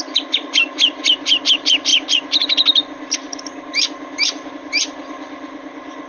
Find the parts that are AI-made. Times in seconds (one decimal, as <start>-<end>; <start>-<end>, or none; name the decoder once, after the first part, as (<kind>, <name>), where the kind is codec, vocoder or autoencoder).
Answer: none